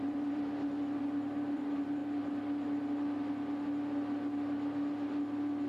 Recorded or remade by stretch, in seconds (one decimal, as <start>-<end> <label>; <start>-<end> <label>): 0.0-2.0 remade; 2.0-5.7 recorded